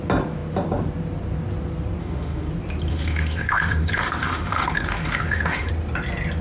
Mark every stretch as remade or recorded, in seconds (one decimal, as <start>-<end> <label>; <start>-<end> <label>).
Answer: 0.0-2.0 recorded; 2.0-2.5 remade; 2.5-2.9 recorded; 2.9-5.7 remade; 5.7-6.4 recorded

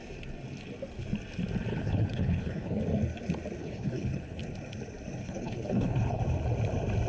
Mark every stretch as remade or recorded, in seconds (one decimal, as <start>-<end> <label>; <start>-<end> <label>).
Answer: 0.0-1.7 recorded; 1.7-2.8 remade; 2.8-3.6 recorded; 3.6-4.4 remade; 4.4-5.2 recorded; 5.2-6.2 remade; 6.2-7.1 recorded

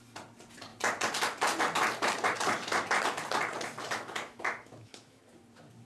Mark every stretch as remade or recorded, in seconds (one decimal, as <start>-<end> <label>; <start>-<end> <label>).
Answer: 0.0-3.8 recorded; 3.8-5.2 remade; 5.2-5.9 recorded